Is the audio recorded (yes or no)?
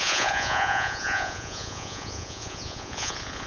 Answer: no